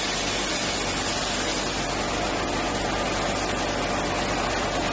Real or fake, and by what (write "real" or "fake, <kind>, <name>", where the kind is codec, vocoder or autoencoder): real